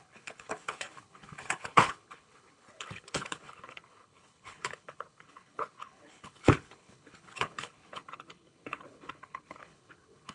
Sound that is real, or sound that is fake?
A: fake